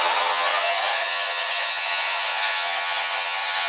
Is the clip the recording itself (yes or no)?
no